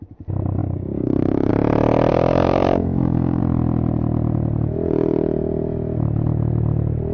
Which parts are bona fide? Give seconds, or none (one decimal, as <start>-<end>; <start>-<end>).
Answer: 0.0-0.6; 1.5-2.1; 3.4-7.1